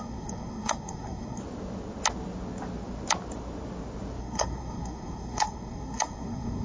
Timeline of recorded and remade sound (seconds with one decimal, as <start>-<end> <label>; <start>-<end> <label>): 0.0-1.4 remade; 1.4-4.2 recorded; 4.2-6.6 remade